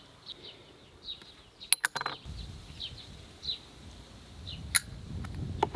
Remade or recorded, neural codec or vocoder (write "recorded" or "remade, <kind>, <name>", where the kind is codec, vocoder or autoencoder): recorded